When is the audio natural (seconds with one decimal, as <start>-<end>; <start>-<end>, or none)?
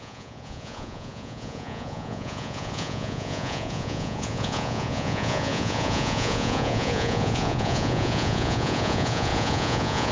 none